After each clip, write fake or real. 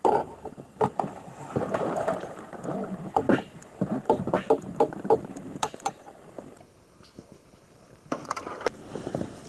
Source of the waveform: fake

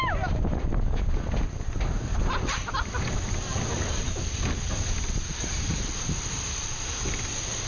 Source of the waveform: real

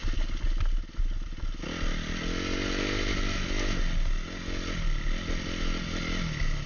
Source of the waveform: real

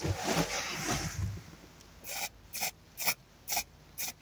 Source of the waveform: real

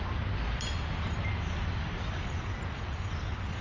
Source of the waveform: real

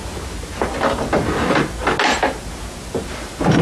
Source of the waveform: real